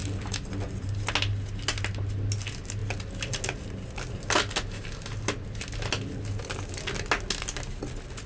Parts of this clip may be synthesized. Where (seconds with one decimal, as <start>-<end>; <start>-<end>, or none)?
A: none